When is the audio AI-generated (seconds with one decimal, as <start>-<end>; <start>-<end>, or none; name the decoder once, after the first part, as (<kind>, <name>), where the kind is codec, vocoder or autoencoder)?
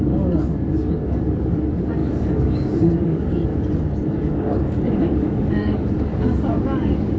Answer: 0.0-3.5 (codec, DAC); 4.2-7.2